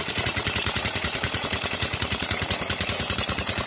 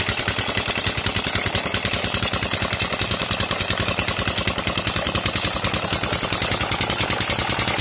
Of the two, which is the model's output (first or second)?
first